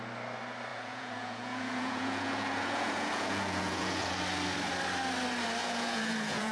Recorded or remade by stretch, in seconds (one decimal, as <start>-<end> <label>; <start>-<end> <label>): 0.0-0.7 recorded; 0.7-4.2 remade; 4.2-5.6 recorded; 5.6-6.5 remade